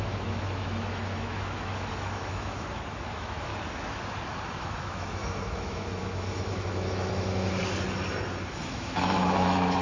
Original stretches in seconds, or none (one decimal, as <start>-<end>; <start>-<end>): 3.5-4.6; 7.6-8.5